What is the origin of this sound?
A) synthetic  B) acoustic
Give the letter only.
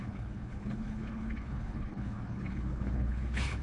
A